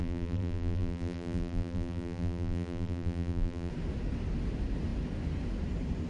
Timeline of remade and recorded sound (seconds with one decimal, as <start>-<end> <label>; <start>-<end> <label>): 0.0-3.7 remade; 3.7-6.1 recorded